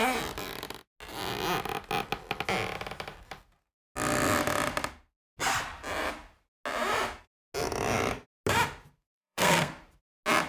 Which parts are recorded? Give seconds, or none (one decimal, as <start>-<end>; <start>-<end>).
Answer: 0.0-9.0; 9.7-10.5